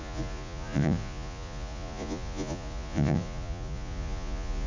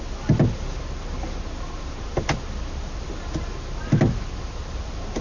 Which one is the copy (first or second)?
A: first